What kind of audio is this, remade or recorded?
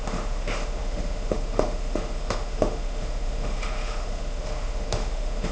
remade